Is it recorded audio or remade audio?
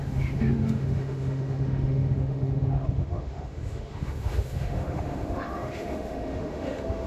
remade